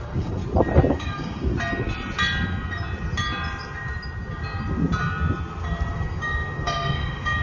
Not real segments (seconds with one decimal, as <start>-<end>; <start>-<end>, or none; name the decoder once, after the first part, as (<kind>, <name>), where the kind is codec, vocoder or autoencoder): 0.0-0.4 (codec, DAC); 0.9-1.5; 5.9-7.4